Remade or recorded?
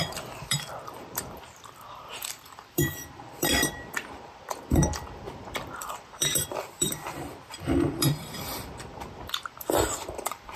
remade